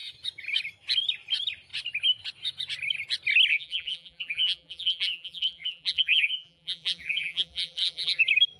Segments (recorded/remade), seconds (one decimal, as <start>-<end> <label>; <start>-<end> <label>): 0.0-3.5 recorded; 3.5-8.2 remade; 8.2-8.6 recorded